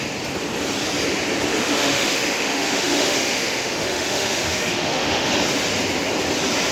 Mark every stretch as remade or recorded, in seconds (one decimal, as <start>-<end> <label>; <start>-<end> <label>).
0.0-1.5 recorded; 1.5-5.3 remade; 5.3-6.7 recorded